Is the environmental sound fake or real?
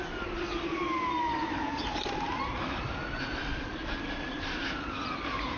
real